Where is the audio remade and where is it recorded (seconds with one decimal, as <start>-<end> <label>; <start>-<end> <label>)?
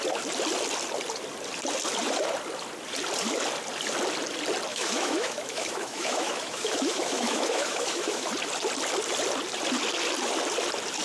0.0-4.7 recorded; 4.7-8.3 remade; 8.3-11.0 recorded